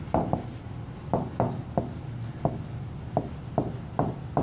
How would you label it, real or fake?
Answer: real